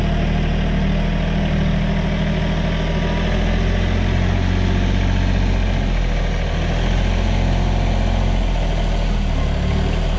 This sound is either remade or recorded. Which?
recorded